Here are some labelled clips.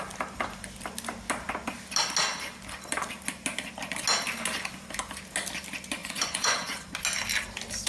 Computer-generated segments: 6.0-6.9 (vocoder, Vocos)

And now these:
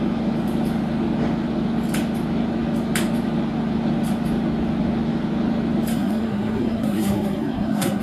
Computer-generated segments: 5.9-8.0 (codec, SNAC)